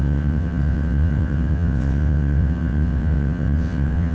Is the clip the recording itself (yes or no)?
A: no